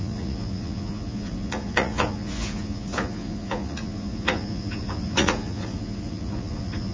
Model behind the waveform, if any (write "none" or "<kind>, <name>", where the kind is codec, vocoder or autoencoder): vocoder, Vocos